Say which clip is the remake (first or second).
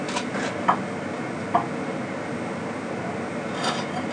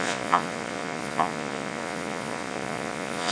second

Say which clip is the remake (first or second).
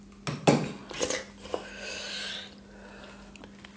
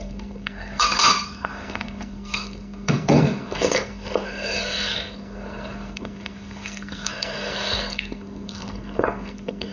second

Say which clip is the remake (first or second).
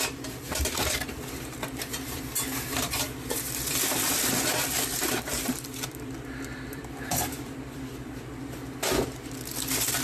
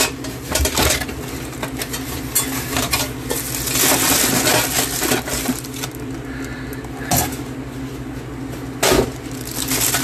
first